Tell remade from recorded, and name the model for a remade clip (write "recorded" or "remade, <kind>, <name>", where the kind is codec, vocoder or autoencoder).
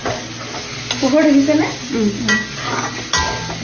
recorded